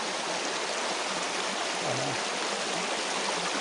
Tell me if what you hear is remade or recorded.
recorded